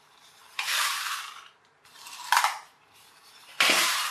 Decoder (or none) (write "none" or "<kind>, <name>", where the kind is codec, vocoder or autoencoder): vocoder, BigVGAN v2